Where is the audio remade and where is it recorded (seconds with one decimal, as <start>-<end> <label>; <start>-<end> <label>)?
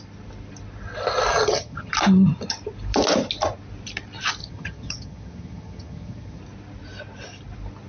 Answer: 0.0-1.3 recorded; 1.3-1.9 remade; 1.9-4.4 recorded; 4.4-6.4 remade; 6.4-7.9 recorded